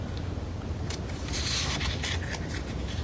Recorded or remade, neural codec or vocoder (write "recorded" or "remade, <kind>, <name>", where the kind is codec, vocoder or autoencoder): recorded